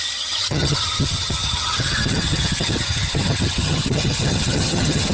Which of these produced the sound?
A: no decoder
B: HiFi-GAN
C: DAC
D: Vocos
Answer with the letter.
B